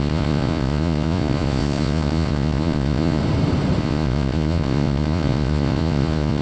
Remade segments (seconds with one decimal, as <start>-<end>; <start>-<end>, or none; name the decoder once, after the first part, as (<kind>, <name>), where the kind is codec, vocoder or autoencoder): 0.0-3.2 (vocoder, Vocos); 3.8-6.4